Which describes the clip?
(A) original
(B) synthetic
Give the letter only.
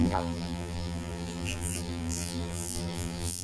B